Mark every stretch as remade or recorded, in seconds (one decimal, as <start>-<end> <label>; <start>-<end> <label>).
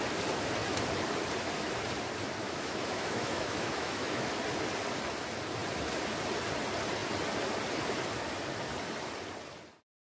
0.0-2.4 recorded; 2.4-4.3 remade; 4.3-10.0 recorded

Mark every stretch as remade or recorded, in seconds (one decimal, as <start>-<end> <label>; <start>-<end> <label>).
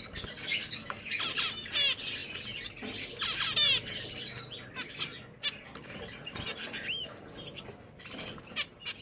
0.0-0.6 recorded; 0.6-1.2 remade; 1.2-9.0 recorded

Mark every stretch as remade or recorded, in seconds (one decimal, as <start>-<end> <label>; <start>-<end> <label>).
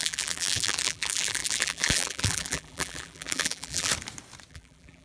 0.0-3.9 remade; 3.9-4.5 recorded; 4.5-5.0 remade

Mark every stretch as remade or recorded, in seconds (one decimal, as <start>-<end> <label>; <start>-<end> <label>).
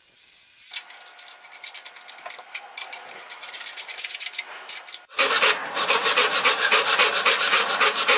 0.0-8.2 recorded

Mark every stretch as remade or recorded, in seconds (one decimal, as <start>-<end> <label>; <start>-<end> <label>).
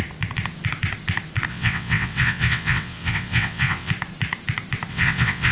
0.0-1.5 recorded; 1.5-3.9 remade; 3.9-4.9 recorded; 4.9-5.5 remade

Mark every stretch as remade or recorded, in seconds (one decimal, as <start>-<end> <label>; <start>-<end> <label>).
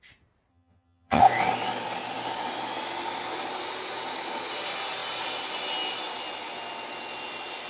0.0-0.5 recorded; 0.5-1.2 remade; 1.2-7.7 recorded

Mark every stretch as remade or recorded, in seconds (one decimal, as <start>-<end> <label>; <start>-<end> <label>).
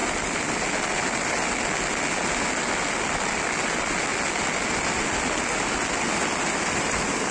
0.0-7.3 recorded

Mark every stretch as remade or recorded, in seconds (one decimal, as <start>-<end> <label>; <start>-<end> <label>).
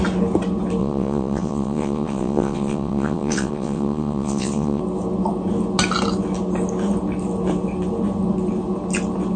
0.0-0.8 recorded; 0.8-4.8 remade; 4.8-9.4 recorded